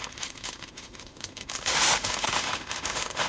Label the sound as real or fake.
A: fake